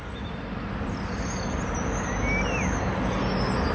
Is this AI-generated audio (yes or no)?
no